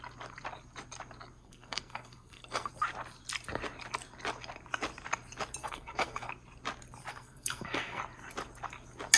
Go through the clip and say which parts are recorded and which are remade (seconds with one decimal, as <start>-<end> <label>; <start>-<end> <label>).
0.0-1.4 recorded; 1.4-2.7 remade; 2.7-5.6 recorded; 5.6-6.3 remade; 6.3-7.1 recorded; 7.1-8.0 remade; 8.0-9.2 recorded